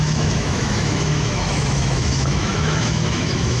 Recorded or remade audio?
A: remade